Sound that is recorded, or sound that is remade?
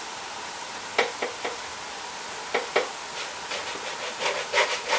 recorded